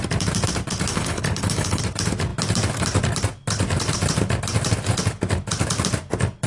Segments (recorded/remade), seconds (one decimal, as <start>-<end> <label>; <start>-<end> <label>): 0.0-0.9 recorded; 0.9-1.8 remade; 1.8-6.5 recorded